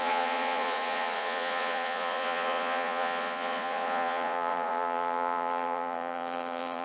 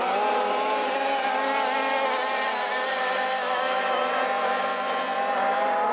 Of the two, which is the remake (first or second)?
first